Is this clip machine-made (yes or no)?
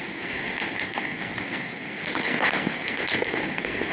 yes